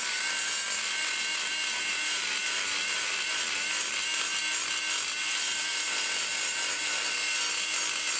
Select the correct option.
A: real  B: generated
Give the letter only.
A